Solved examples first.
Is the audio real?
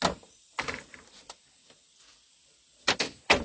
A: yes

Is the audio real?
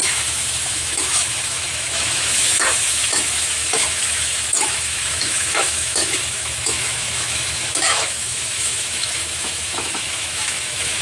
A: no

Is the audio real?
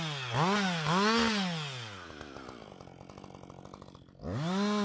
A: yes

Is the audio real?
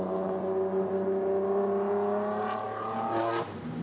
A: yes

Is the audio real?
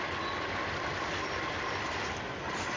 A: yes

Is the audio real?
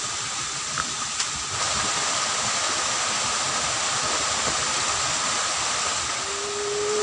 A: yes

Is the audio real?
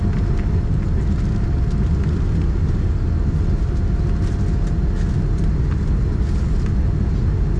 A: yes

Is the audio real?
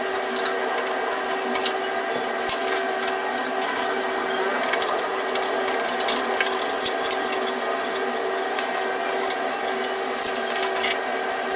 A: yes